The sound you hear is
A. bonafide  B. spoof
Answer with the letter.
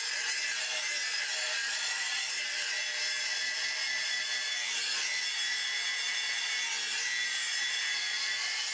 B